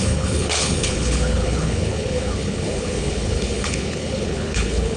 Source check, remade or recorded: remade